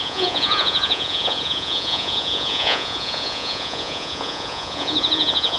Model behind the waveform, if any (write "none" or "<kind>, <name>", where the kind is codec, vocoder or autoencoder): vocoder, Vocos